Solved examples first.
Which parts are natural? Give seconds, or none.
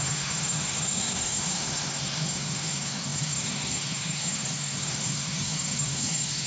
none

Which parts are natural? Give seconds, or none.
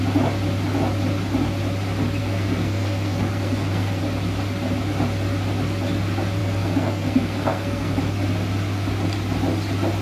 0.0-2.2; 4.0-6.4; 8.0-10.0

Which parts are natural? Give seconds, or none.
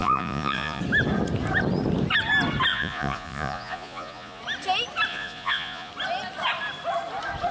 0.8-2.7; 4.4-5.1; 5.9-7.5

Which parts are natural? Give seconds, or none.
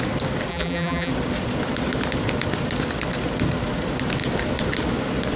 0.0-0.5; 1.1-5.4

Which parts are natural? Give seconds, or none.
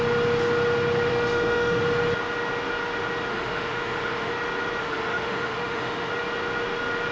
0.0-1.1; 1.8-3.3; 4.3-4.8; 6.1-7.1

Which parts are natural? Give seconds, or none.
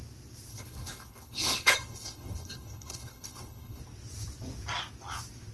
0.0-0.5; 3.8-5.5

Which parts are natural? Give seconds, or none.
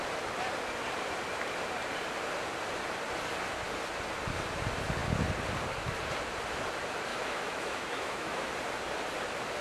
0.0-7.1; 8.5-9.6